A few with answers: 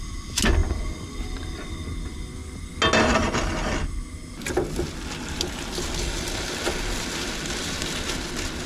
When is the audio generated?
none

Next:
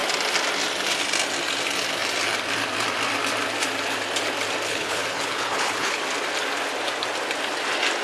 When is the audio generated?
4.7-6.0 (codec, HILCodec)

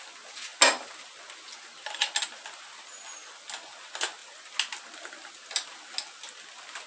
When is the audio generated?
none

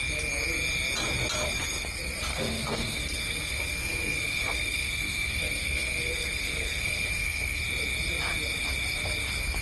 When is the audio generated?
2.3-7.6 (codec, SNAC)

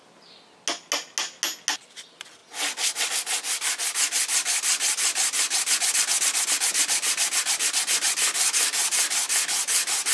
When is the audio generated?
none

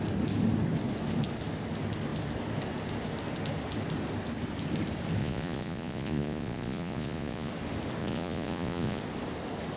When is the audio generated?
5.2-7.5 (vocoder, Vocos); 8.0-9.0

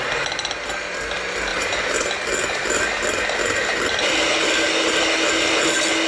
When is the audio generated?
1.5-4.1 (vocoder, BigVGAN v2)

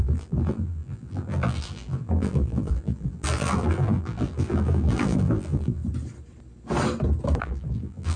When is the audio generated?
0.0-5.8 (vocoder, BigVGAN v2); 7.4-8.2